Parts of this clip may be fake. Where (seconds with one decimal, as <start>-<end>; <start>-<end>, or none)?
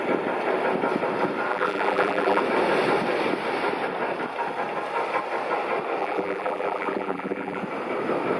1.5-2.4; 6.0-7.6